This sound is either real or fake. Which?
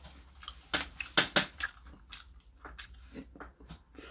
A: real